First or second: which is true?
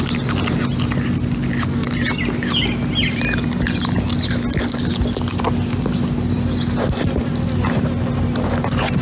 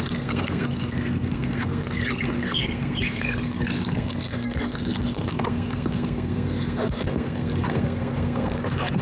first